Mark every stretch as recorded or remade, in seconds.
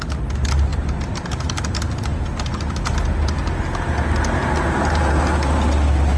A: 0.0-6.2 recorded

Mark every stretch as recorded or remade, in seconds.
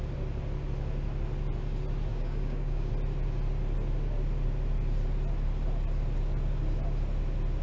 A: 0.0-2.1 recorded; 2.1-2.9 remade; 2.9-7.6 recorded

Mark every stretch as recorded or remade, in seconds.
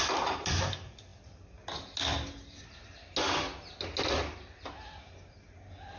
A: 0.0-6.0 recorded